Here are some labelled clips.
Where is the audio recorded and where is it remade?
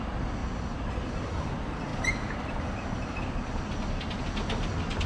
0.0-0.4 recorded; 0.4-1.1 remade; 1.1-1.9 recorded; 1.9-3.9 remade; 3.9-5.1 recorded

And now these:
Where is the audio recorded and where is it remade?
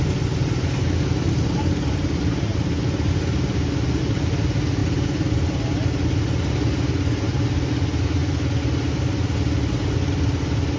0.0-10.8 recorded